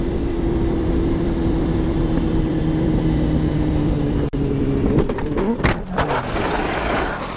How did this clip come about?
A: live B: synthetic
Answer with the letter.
B